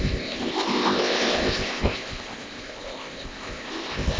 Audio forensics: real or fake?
fake